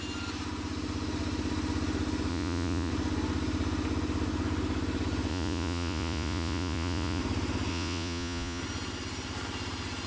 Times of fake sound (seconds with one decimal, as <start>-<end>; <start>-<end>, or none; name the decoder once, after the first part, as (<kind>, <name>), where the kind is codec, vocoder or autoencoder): 2.3-2.9 (vocoder, Vocos); 5.3-7.2; 7.7-8.6